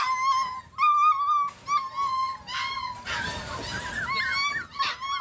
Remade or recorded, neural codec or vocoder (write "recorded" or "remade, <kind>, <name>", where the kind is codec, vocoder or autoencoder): recorded